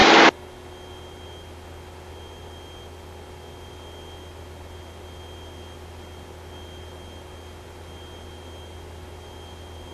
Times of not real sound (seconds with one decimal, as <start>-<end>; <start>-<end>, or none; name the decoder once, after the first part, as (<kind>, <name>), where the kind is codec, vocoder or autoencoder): none